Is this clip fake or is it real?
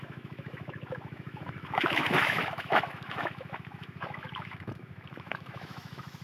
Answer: fake